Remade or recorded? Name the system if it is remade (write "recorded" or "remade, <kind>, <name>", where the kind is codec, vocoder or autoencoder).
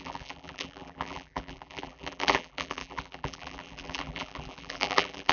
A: remade, vocoder, BigVGAN v2